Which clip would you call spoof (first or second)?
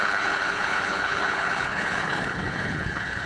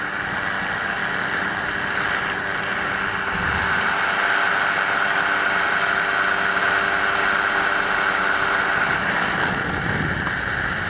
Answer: first